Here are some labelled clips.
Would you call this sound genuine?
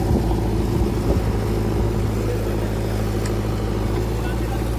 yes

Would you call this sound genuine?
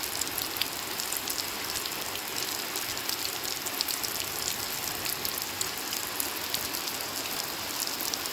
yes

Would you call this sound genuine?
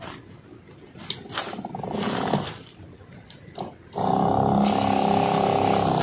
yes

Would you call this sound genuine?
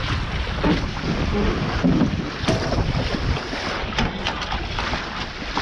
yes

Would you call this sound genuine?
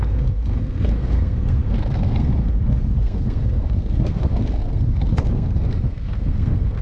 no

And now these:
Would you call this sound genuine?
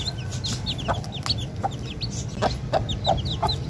yes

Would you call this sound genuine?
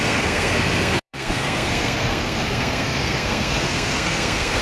no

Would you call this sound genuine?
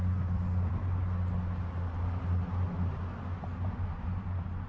yes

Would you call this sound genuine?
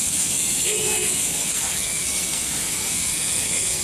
no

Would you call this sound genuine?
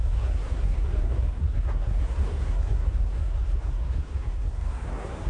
no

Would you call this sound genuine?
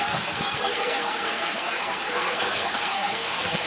no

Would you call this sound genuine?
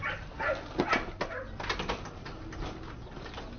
yes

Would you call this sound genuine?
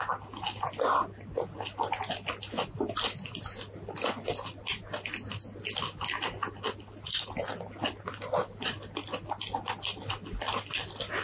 yes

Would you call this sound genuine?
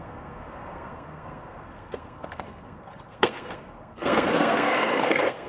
no